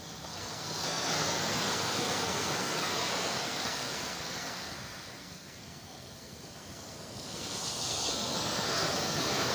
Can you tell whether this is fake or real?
fake